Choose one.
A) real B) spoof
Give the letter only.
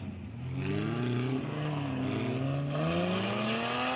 A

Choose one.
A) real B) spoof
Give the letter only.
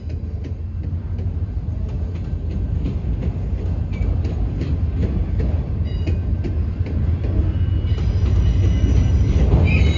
A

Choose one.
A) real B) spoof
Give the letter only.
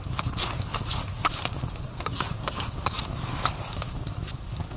B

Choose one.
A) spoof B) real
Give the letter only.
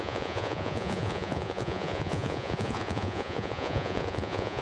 A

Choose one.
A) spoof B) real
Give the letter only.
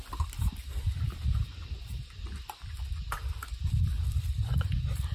A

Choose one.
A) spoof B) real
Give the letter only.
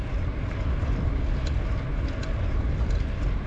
B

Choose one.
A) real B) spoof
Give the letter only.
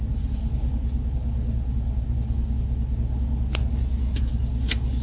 A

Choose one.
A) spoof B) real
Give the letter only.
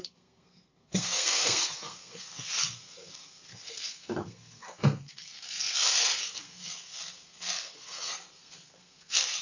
A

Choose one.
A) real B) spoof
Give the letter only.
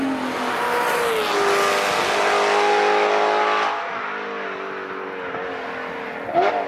A